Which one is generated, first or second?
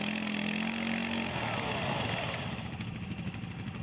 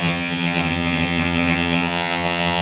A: second